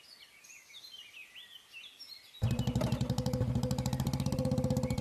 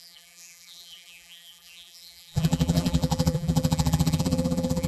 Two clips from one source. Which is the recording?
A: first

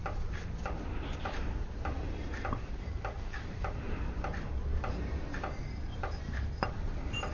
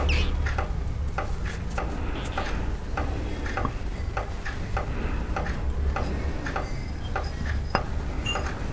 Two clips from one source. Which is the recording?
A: second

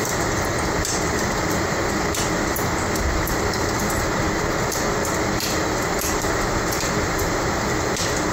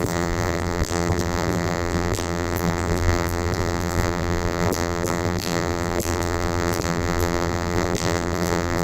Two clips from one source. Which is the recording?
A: first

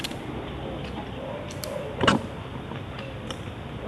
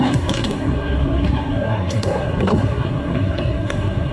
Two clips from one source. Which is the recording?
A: first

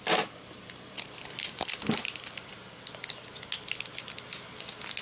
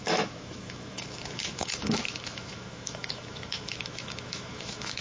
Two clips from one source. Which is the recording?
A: first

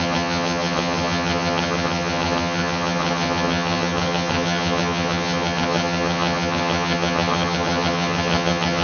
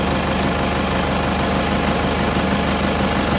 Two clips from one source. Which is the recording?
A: second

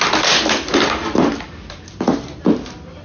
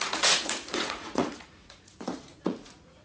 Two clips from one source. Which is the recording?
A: first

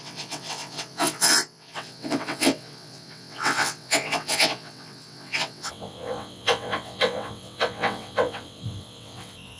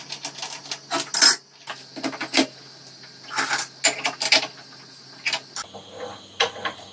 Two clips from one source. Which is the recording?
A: second